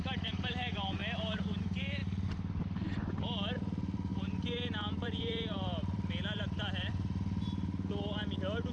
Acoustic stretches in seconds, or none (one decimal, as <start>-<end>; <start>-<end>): 2.0-3.2

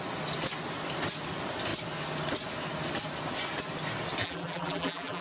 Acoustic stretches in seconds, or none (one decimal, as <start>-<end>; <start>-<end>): 0.0-4.2

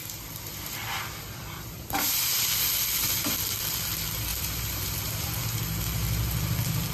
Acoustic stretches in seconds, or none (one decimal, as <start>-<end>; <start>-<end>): 2.7-4.3; 5.6-6.9